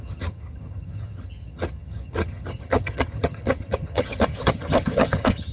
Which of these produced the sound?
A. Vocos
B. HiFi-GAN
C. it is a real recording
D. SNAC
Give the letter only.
B